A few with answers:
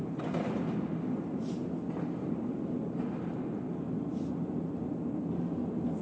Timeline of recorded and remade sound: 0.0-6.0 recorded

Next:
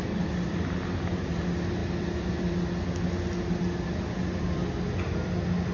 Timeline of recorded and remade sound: 0.0-5.7 recorded

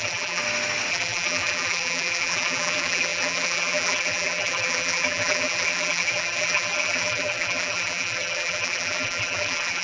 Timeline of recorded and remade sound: 0.0-0.4 remade; 0.4-0.9 recorded; 0.9-9.8 remade